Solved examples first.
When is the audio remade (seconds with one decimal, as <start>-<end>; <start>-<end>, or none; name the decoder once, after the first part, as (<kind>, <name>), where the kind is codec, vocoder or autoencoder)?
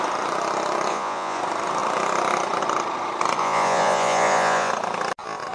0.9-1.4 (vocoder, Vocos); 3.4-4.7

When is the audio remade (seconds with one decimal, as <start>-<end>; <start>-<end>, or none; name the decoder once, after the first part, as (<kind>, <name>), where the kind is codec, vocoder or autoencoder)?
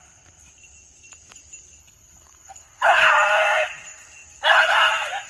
1.8-3.1 (codec, HILCodec)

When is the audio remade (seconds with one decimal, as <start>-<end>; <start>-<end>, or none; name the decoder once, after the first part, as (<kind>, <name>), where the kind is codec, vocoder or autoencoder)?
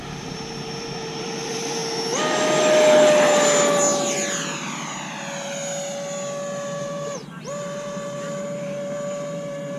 0.0-1.8 (vocoder, BigVGAN v2); 6.8-9.8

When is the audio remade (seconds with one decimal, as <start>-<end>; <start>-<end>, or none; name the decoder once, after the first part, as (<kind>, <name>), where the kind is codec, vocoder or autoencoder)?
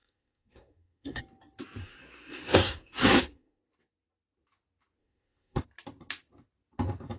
0.0-1.2 (codec, SNAC); 1.8-3.6; 5.0-5.6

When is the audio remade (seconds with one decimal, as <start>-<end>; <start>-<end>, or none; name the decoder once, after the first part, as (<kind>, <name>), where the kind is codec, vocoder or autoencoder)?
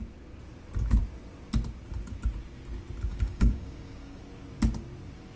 3.1-4.2 (codec, DAC)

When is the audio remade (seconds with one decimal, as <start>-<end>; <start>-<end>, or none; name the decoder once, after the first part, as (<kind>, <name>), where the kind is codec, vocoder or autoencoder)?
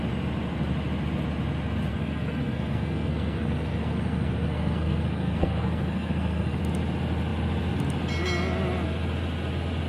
1.9-6.6 (codec, SNAC)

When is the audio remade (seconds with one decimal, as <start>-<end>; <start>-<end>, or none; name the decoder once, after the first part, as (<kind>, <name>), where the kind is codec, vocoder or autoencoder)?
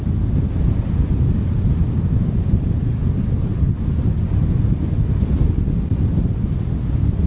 none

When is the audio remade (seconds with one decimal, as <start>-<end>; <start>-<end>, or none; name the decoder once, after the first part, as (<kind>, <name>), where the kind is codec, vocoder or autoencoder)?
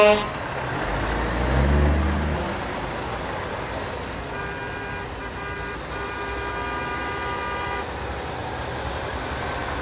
none